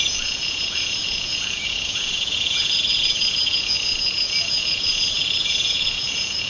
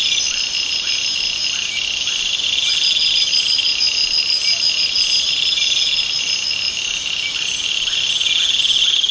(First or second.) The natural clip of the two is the second